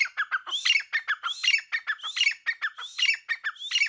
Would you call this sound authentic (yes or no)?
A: yes